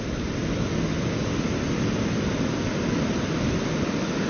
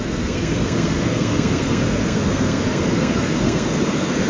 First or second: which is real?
first